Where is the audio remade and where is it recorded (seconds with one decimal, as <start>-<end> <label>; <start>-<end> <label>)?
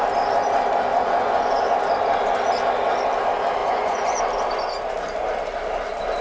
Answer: 0.0-0.9 recorded; 0.9-1.6 remade; 1.6-3.6 recorded; 3.6-4.2 remade; 4.2-6.2 recorded